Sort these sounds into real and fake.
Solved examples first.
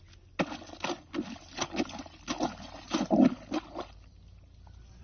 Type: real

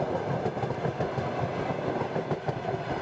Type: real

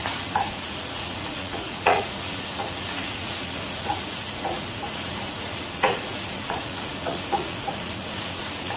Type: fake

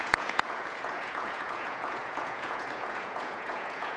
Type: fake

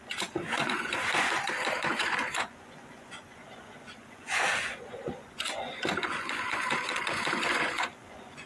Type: fake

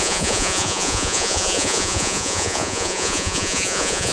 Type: fake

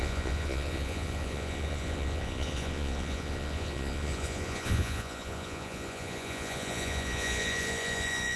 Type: fake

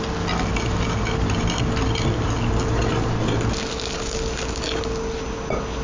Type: real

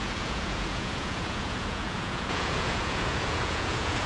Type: fake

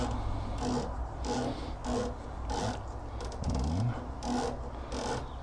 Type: real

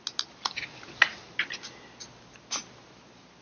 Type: real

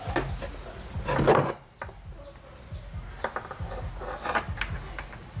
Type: real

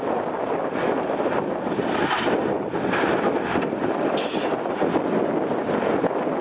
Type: real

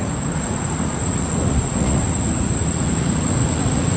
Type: fake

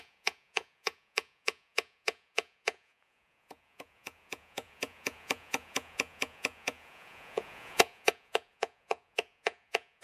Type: fake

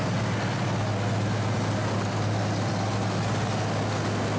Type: real